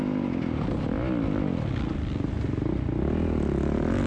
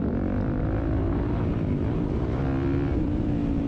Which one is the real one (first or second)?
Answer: first